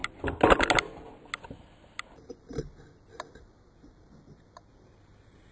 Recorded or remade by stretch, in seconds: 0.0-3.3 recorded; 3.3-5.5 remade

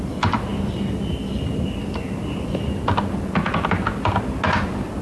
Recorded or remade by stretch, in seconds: 0.0-5.0 recorded

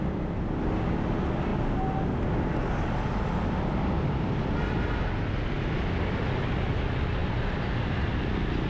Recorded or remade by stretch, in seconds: 0.0-8.7 recorded

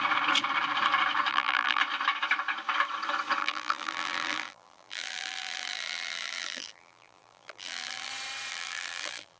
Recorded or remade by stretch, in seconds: 0.0-1.3 recorded; 1.3-1.8 remade; 1.8-3.4 recorded; 3.4-8.1 remade; 8.1-8.5 recorded; 8.5-9.4 remade

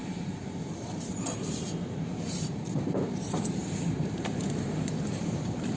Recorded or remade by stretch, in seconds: 0.0-5.8 remade

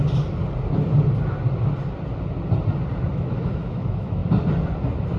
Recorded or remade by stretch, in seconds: 0.0-3.1 recorded; 3.1-4.2 remade; 4.2-5.2 recorded

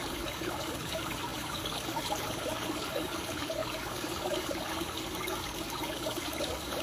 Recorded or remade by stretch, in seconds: 0.0-6.8 remade